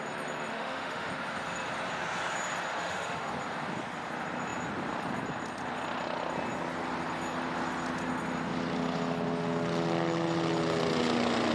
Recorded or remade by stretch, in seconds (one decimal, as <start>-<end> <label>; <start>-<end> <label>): 0.0-0.5 recorded; 0.5-1.1 remade; 1.1-2.7 recorded; 2.7-3.3 remade; 3.3-11.5 recorded